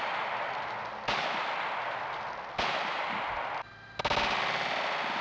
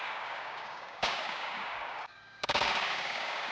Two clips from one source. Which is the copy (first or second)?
second